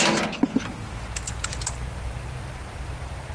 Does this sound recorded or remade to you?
recorded